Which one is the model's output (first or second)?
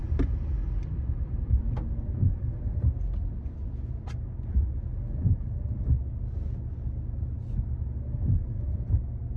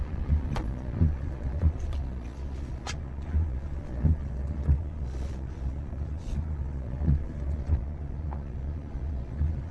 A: second